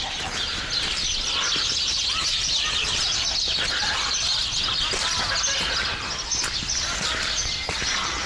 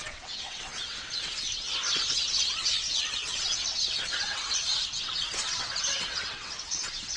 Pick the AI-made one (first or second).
second